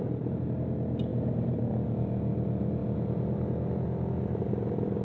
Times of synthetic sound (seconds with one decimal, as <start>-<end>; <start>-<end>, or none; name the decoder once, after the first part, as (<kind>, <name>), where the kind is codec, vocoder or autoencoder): 1.1-1.7 (vocoder, BigVGAN v2)